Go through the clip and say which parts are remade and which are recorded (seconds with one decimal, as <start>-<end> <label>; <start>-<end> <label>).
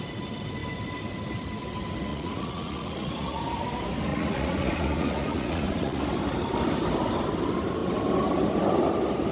0.0-2.1 recorded; 2.1-3.4 remade; 3.4-4.1 recorded; 4.1-6.0 remade; 6.0-9.3 recorded